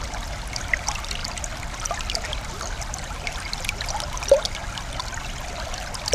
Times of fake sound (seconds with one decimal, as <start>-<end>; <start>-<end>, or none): none

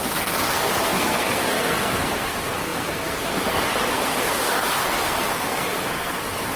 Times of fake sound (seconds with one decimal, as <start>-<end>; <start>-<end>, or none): 0.0-6.6

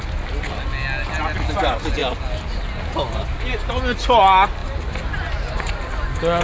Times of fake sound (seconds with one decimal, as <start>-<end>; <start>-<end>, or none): none

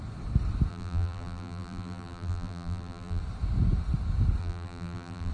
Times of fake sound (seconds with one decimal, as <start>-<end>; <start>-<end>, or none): 0.7-3.2; 4.4-5.3

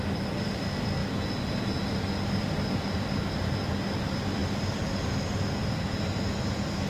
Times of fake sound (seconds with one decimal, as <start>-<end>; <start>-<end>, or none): 4.4-6.4

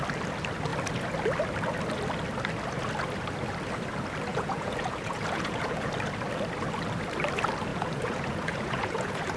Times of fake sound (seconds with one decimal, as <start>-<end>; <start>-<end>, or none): 4.3-5.9; 7.7-9.4

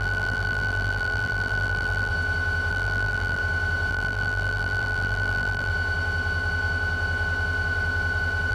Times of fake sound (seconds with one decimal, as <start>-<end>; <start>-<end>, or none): 0.0-2.1; 2.7-3.4; 3.9-5.7

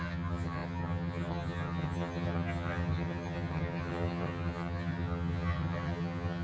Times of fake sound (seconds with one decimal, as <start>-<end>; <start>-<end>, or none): 0.0-6.4